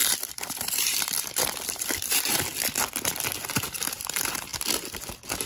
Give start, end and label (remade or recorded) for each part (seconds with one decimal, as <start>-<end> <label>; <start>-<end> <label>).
0.0-3.3 remade; 3.3-5.5 recorded